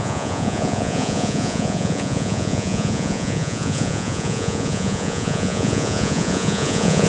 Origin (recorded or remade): remade